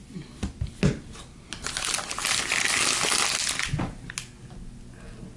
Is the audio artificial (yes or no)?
no